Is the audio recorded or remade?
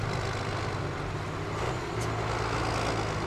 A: recorded